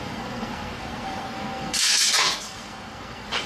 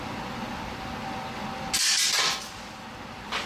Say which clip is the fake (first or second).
first